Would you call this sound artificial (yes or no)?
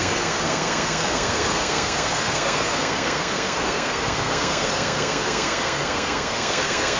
yes